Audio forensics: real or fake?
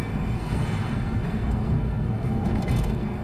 fake